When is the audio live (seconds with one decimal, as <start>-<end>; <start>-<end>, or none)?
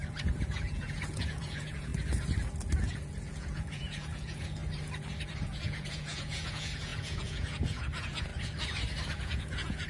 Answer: 1.9-2.8; 4.6-5.3; 8.3-9.2